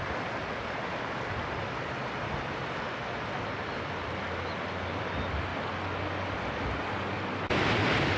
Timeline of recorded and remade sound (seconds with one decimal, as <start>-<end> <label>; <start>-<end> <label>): 0.0-8.2 recorded